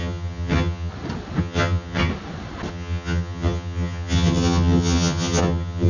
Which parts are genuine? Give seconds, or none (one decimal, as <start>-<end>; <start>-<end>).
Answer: 0.9-1.4; 2.1-2.7

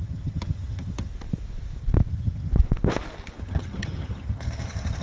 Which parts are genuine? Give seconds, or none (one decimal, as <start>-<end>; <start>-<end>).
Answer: 1.1-2.1; 2.5-3.4

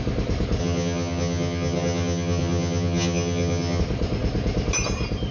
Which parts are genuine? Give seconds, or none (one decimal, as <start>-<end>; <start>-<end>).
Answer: 0.0-0.6; 3.8-5.3

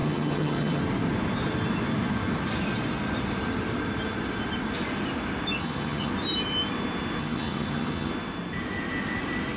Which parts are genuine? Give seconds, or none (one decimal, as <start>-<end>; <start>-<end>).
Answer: 0.8-5.6; 6.1-7.2; 8.1-9.6

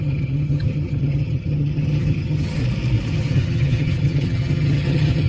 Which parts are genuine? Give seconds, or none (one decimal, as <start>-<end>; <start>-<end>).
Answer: 2.6-3.1